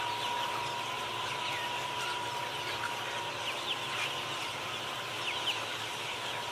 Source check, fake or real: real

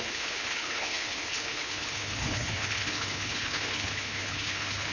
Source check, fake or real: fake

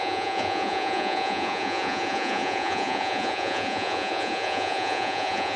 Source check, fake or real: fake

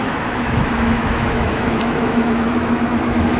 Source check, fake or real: fake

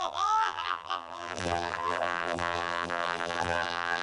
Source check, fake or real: fake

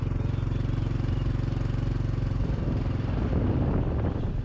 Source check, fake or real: real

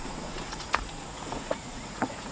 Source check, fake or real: fake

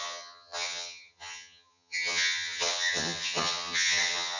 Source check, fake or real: fake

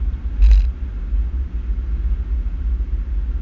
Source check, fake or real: real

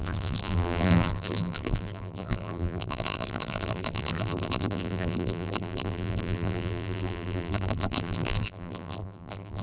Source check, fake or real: fake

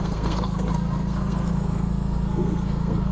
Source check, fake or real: fake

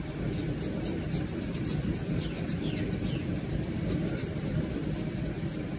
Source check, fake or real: fake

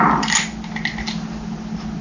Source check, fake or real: real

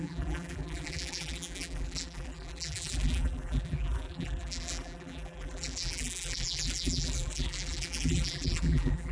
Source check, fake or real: fake